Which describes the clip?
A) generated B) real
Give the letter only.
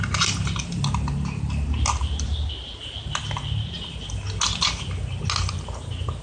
B